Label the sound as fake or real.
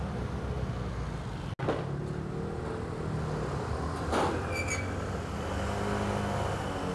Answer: real